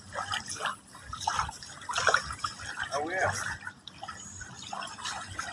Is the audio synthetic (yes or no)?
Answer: no